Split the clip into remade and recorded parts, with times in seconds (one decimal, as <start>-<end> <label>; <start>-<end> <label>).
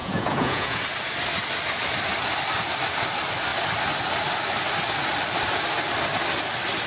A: 0.0-0.8 remade; 0.8-6.9 recorded